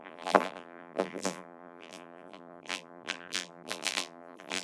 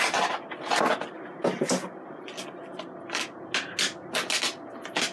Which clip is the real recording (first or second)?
second